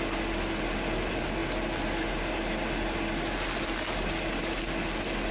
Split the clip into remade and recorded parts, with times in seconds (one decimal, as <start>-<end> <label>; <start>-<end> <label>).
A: 0.0-5.3 recorded